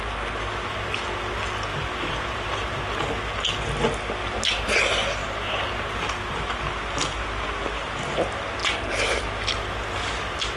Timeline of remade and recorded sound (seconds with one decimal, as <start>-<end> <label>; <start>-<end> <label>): 0.0-1.7 recorded; 1.7-2.8 remade; 2.8-8.6 recorded; 8.6-9.2 remade; 9.2-10.6 recorded